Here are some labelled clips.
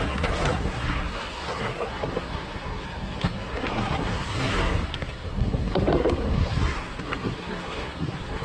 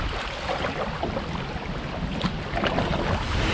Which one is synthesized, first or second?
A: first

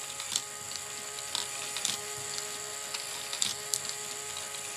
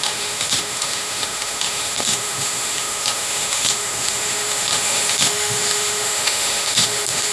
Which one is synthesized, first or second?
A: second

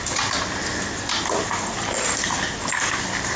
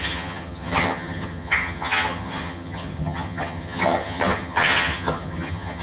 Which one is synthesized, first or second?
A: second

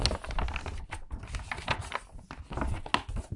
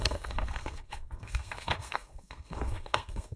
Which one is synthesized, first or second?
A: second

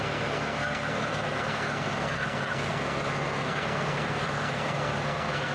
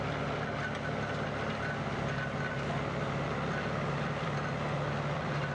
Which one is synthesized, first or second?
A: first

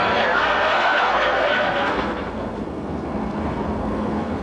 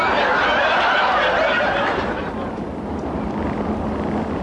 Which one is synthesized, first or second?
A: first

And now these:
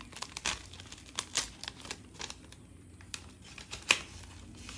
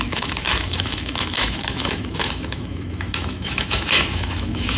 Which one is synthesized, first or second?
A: second